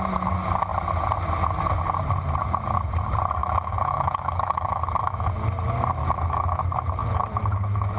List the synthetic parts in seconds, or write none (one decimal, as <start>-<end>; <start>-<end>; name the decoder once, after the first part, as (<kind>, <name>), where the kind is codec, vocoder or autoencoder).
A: 3.4-5.3 (autoencoder, DAC-VAE); 6.0-6.6; 7.0-8.0